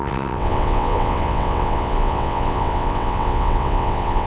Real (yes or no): no